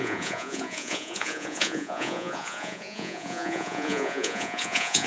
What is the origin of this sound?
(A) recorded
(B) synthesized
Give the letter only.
B